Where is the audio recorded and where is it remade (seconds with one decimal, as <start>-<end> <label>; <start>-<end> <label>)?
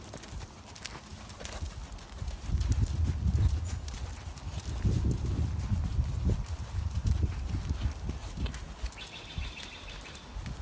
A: 0.0-5.9 recorded; 5.9-7.9 remade; 7.9-10.6 recorded